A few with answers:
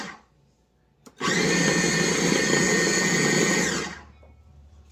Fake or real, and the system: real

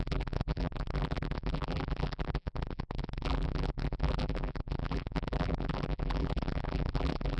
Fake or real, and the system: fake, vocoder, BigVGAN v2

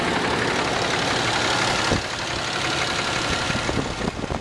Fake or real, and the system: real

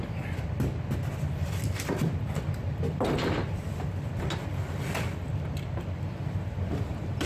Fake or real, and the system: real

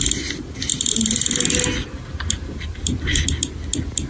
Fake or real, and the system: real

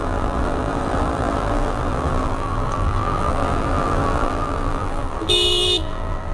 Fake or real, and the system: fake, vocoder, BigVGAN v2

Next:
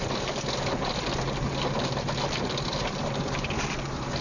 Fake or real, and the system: real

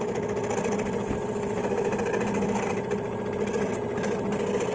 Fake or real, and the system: real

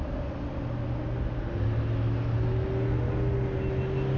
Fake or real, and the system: real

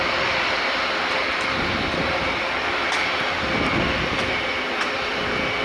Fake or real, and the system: real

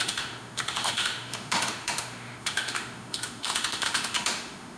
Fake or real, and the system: fake, autoencoder, DAC-VAE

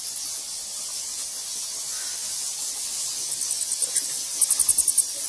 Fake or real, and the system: real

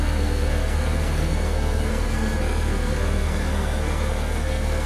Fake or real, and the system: fake, codec, SNAC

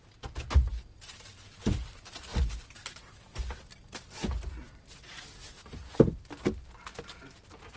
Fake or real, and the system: real